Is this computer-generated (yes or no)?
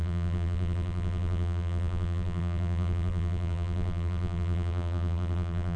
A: yes